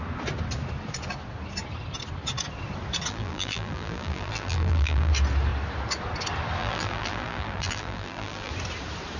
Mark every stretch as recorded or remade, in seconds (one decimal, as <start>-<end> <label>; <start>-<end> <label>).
0.0-3.1 recorded; 3.1-5.1 remade; 5.1-6.6 recorded; 6.6-8.5 remade; 8.5-9.2 recorded